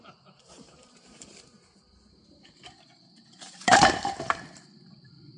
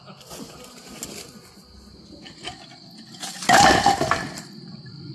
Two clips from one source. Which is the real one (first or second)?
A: second